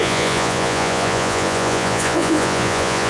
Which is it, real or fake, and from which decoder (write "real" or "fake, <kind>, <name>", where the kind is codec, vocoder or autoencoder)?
fake, vocoder, Vocos